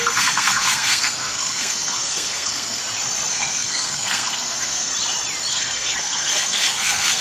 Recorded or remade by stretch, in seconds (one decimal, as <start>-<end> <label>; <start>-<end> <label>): 0.0-2.8 remade; 2.8-3.3 recorded; 3.3-4.9 remade; 4.9-5.5 recorded; 5.5-7.2 remade